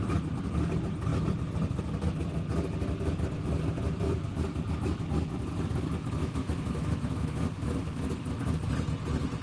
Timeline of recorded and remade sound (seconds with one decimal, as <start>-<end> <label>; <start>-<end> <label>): 0.0-6.2 recorded; 6.2-8.0 remade; 8.0-9.4 recorded